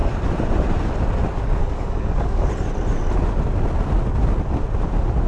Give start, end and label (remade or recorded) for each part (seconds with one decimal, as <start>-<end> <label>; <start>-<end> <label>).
0.0-1.6 recorded; 1.6-2.5 remade; 2.5-5.3 recorded